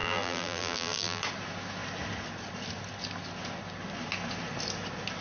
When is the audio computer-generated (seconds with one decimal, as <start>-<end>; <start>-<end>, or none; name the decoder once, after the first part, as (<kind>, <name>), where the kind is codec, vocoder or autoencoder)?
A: 0.0-1.2 (vocoder, BigVGAN v2)